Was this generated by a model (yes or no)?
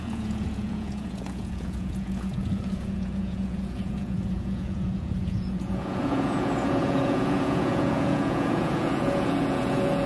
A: yes